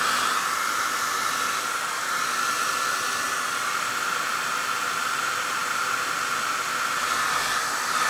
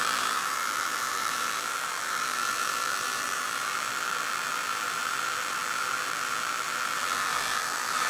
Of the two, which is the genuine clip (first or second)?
first